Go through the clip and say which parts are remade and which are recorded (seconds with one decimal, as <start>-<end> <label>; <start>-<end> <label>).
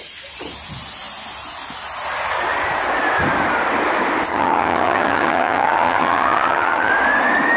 0.0-4.3 recorded; 4.3-6.9 remade; 6.9-7.6 recorded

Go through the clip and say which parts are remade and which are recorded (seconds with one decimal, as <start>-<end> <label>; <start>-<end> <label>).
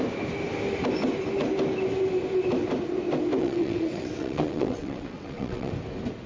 0.0-3.4 recorded; 3.4-5.7 remade; 5.7-6.3 recorded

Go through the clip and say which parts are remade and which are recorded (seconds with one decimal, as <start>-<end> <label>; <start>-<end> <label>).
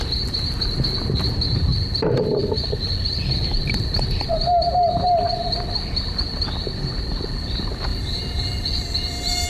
0.0-1.7 recorded; 1.7-4.0 remade; 4.0-7.9 recorded; 7.9-9.5 remade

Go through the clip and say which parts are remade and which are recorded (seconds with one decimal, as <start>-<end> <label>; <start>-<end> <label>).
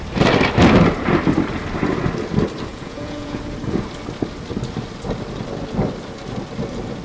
0.0-2.7 recorded; 2.7-3.4 remade; 3.4-7.0 recorded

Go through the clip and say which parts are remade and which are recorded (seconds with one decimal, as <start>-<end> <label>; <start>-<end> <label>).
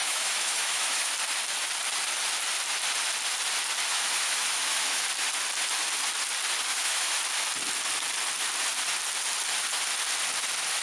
0.0-1.1 remade; 1.1-3.9 recorded; 3.9-5.0 remade; 5.0-6.7 recorded; 6.7-7.2 remade; 7.2-10.8 recorded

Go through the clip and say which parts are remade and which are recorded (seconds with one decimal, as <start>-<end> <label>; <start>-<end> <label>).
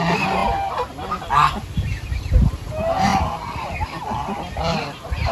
0.0-5.3 recorded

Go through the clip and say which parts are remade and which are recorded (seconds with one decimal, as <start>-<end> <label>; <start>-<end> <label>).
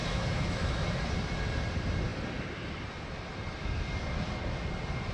0.0-1.0 remade; 1.0-5.1 recorded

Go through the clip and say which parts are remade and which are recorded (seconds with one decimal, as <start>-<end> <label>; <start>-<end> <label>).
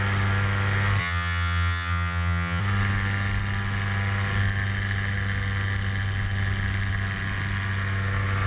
0.0-1.0 recorded; 1.0-2.6 remade; 2.6-8.5 recorded